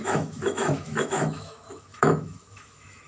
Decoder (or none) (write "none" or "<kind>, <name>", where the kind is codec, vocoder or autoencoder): autoencoder, DAC-VAE